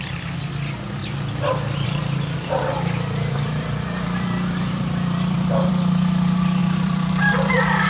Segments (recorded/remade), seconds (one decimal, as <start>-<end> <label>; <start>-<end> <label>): 0.0-1.0 recorded; 1.0-5.7 remade; 5.7-6.6 recorded; 6.6-7.5 remade; 7.5-7.9 recorded